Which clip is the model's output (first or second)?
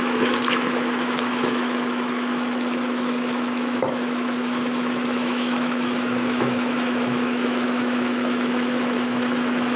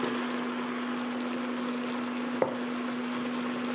first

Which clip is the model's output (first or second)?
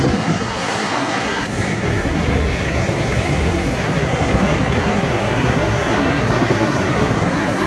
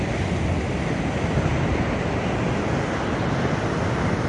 first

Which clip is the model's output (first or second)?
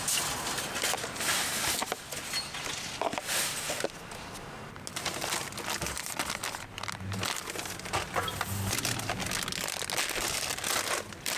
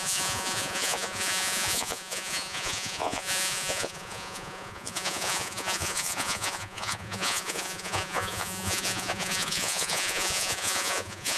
second